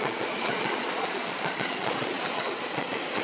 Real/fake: fake